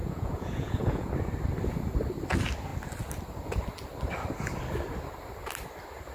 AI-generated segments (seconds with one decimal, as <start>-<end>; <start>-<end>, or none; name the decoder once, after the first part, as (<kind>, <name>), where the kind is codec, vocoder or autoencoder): 0.0-1.1 (vocoder, Vocos)